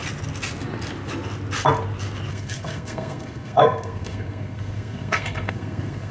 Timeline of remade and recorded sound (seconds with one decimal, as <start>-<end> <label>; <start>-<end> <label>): 0.0-2.3 recorded; 2.3-6.1 remade